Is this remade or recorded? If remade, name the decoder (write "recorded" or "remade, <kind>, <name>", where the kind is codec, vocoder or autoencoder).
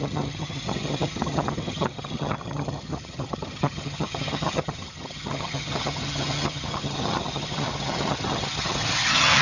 remade, vocoder, HiFi-GAN